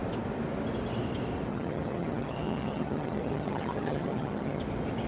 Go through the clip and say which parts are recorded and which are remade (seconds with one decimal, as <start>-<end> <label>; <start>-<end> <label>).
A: 0.0-1.5 recorded; 1.5-4.6 remade; 4.6-5.1 recorded